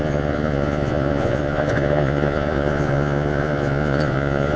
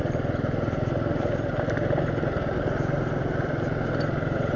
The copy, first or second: first